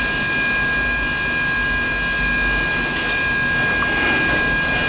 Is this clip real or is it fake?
real